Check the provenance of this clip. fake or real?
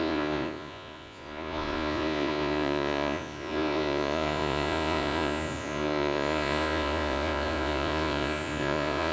fake